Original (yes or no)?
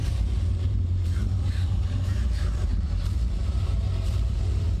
no